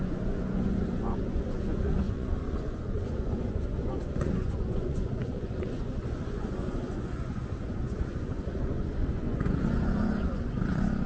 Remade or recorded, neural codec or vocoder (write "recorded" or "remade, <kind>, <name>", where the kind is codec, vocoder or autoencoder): remade, vocoder, Vocos